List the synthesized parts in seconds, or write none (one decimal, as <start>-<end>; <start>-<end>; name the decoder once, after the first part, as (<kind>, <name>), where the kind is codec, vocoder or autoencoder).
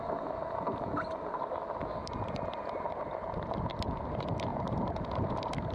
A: 2.0-3.5 (vocoder, BigVGAN v2); 4.5-5.3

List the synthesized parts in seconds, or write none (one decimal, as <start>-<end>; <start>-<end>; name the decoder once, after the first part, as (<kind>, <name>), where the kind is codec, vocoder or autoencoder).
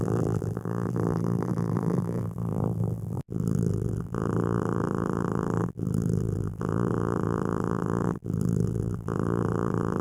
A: 0.0-10.0 (vocoder, BigVGAN v2)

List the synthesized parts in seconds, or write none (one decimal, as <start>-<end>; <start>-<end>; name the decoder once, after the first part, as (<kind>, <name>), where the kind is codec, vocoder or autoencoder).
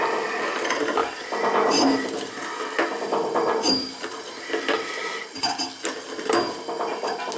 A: 1.0-5.4 (vocoder, BigVGAN v2)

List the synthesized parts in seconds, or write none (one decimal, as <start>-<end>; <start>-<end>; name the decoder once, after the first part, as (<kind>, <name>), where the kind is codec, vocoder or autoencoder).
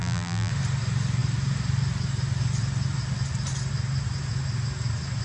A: 0.0-0.5 (vocoder, BigVGAN v2)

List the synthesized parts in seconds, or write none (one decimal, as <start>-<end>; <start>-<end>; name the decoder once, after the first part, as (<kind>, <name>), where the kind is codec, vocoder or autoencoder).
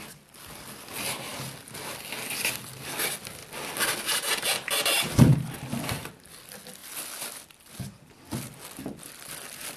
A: none